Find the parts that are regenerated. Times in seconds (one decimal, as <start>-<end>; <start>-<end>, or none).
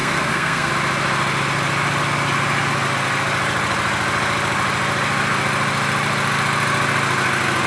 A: 0.0-0.7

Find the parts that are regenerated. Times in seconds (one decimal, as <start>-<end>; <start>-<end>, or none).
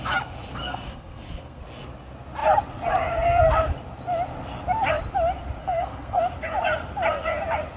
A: 0.6-1.6; 5.6-6.2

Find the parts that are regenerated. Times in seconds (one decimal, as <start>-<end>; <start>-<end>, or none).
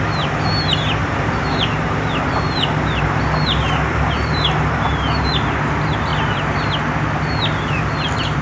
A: 1.0-5.3; 6.1-6.7